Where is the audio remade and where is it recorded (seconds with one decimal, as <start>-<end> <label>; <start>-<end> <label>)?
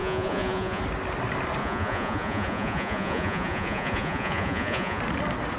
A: 0.0-0.8 remade; 0.8-1.6 recorded; 1.6-5.0 remade; 5.0-5.6 recorded